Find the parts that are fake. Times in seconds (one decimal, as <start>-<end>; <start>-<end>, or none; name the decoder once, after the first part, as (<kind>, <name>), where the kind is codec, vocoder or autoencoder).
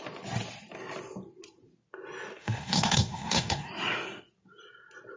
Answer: 2.4-3.7 (codec, SNAC)